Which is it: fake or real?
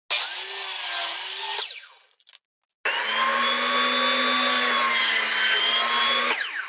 real